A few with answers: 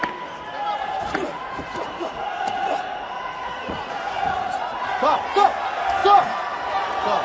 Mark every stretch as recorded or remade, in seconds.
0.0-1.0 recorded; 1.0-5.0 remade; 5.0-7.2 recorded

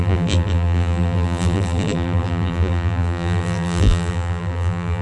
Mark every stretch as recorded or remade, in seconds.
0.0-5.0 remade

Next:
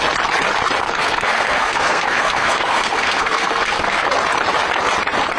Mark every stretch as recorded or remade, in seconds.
0.0-0.8 recorded; 0.8-4.0 remade; 4.0-5.4 recorded

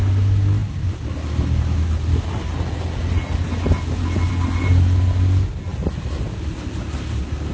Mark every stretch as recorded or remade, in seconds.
0.0-7.5 recorded

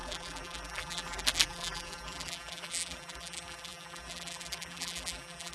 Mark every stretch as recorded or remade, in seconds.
0.0-5.5 remade